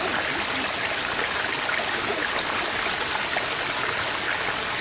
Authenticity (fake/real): real